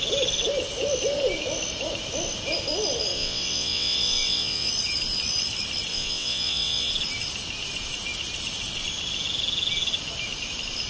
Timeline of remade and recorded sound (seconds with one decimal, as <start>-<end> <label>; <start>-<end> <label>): 0.0-3.1 recorded; 3.1-4.7 remade; 4.7-5.9 recorded; 5.9-6.9 remade; 6.9-10.9 recorded